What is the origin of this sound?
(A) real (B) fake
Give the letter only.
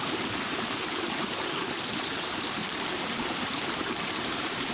B